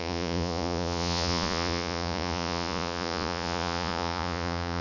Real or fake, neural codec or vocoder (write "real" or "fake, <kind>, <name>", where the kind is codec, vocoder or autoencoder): fake, vocoder, Vocos